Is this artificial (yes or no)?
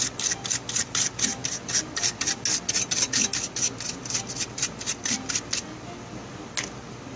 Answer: no